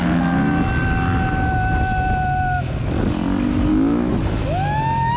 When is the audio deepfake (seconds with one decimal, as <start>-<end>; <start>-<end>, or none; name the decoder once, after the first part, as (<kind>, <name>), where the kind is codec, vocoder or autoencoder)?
3.7-4.2 (autoencoder, DAC-VAE)